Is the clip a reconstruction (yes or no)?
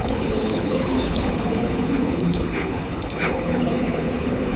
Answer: yes